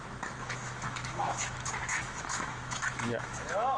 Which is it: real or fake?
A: fake